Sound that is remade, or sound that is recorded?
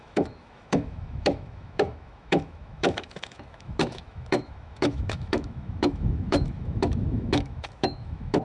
remade